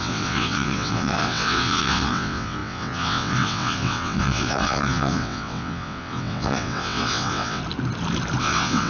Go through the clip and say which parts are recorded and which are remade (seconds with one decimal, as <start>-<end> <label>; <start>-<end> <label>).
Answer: 0.0-7.6 remade; 7.6-8.4 recorded; 8.4-8.9 remade